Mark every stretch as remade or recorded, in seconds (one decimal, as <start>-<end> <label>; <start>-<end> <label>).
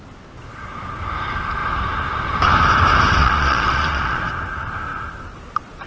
0.0-3.2 recorded; 3.2-4.2 remade; 4.2-5.9 recorded